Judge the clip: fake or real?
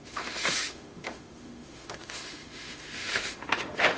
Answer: fake